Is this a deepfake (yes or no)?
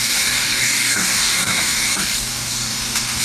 yes